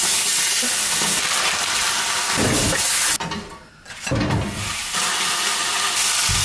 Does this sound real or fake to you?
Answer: real